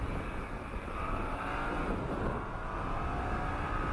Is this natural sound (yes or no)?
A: yes